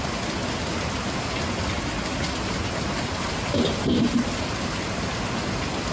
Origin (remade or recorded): recorded